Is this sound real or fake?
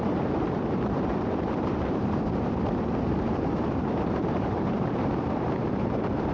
fake